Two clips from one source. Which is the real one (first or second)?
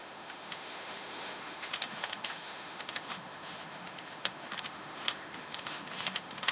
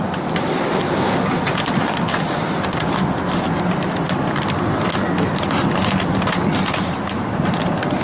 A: second